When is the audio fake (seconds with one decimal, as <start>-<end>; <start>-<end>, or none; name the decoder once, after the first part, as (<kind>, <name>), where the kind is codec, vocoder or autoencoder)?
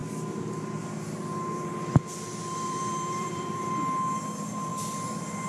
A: 2.4-3.7 (vocoder, BigVGAN v2); 4.7-5.5